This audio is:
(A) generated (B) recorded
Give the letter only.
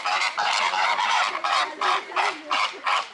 A